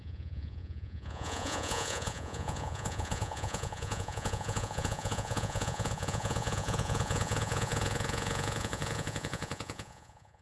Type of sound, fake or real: fake